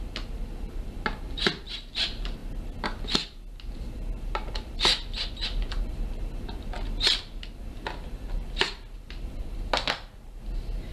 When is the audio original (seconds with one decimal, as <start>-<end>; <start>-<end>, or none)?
0.0-10.9